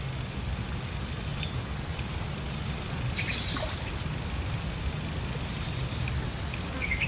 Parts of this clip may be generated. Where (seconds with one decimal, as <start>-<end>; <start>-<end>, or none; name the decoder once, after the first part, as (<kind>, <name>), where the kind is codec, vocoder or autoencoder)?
1.3-4.9 (vocoder, BigVGAN v2)